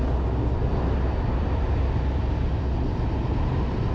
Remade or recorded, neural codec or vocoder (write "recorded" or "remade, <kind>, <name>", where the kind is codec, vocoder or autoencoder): recorded